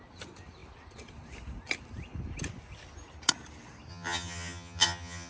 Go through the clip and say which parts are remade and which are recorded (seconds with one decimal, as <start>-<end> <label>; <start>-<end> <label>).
0.0-3.9 recorded; 3.9-5.3 remade